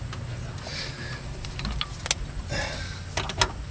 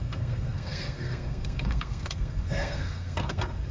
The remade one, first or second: second